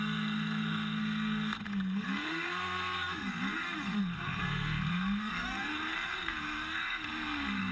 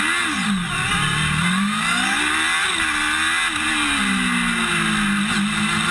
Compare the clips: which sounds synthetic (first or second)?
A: first